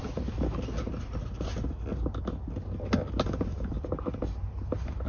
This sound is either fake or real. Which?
real